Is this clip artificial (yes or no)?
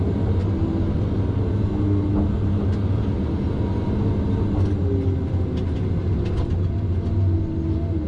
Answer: no